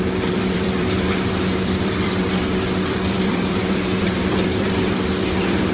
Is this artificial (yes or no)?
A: yes